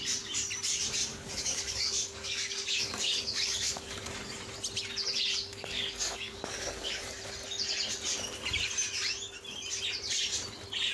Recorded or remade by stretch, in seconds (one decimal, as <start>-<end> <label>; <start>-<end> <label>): 0.0-1.1 recorded; 1.1-4.0 remade; 4.0-5.5 recorded; 5.5-7.2 remade; 7.2-10.9 recorded